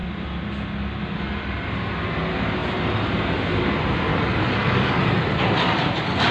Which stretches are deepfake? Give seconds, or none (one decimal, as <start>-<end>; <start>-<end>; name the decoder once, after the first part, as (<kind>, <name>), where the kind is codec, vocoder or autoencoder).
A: 4.1-5.0 (codec, DAC)